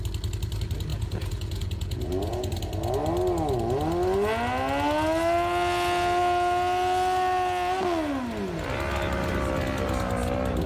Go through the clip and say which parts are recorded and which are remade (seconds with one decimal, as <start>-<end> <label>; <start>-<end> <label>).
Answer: 0.0-0.9 recorded; 0.9-2.5 remade; 2.5-10.7 recorded